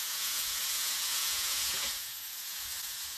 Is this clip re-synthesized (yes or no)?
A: yes